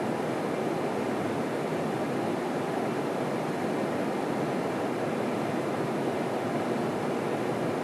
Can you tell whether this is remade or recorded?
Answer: recorded